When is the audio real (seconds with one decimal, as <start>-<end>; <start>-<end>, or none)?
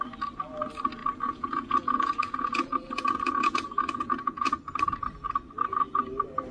0.0-1.0; 4.6-6.5